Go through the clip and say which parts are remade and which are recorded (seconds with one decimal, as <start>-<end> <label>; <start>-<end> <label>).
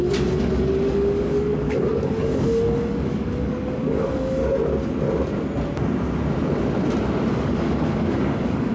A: 0.0-4.4 remade; 4.4-7.3 recorded; 7.3-8.7 remade